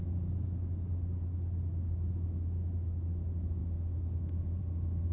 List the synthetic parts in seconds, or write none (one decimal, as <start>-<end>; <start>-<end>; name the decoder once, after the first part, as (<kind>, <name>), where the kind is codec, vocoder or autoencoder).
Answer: none